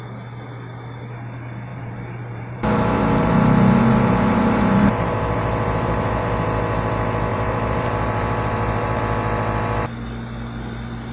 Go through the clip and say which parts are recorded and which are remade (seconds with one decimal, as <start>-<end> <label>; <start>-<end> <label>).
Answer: 0.0-1.7 recorded; 1.7-6.2 remade; 6.2-7.3 recorded; 7.3-9.0 remade; 9.0-11.1 recorded